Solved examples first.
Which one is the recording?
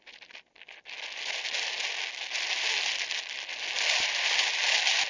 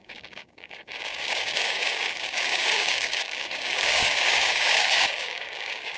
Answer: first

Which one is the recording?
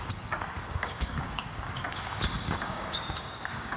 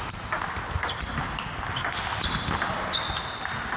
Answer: second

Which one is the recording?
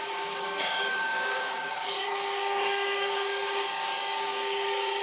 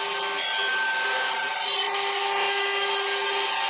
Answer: second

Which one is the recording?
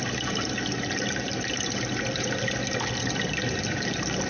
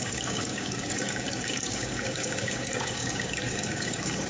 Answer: first